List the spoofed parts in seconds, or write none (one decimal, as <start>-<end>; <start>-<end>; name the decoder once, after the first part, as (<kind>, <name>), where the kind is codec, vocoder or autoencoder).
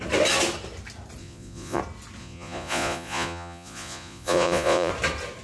1.2-1.8 (vocoder, Vocos); 2.2-4.9